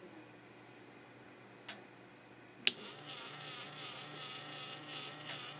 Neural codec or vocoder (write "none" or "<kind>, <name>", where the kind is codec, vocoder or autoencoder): none